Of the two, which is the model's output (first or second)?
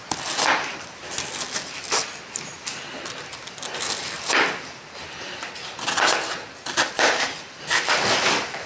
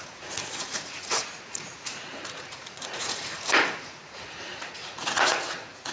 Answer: second